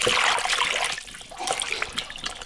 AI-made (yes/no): no